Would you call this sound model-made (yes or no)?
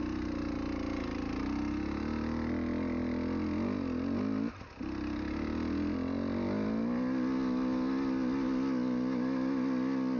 no